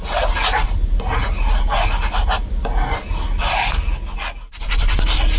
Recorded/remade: recorded